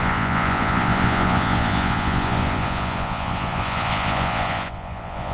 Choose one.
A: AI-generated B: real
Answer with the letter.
A